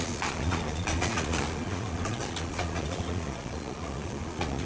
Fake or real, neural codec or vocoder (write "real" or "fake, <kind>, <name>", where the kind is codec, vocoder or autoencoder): fake, vocoder, Vocos